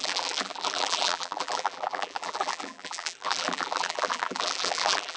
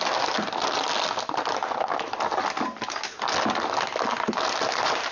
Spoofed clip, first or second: first